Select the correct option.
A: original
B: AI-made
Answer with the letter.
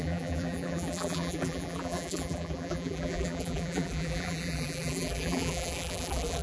B